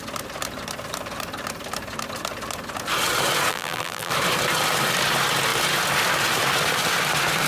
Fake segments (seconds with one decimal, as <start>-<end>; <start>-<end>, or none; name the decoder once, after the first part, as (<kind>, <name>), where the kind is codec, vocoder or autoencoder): 3.5-4.1 (vocoder, BigVGAN v2)